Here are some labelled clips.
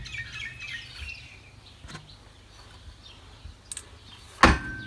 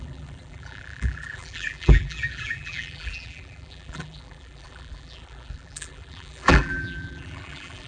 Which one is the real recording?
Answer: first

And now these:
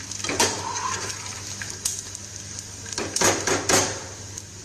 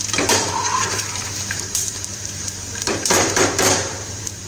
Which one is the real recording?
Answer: first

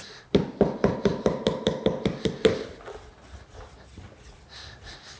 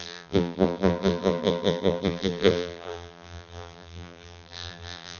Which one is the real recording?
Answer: first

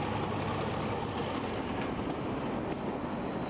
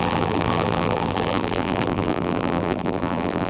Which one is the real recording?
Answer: first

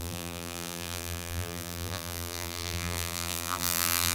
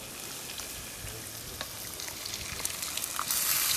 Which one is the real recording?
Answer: second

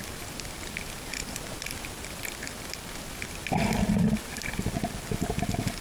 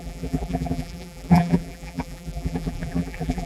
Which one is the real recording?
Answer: first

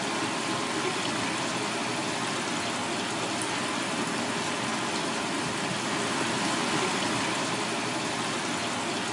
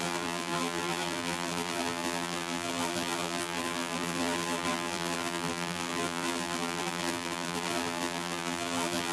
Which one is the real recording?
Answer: first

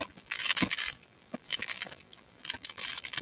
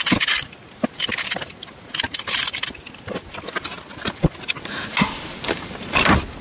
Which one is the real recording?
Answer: second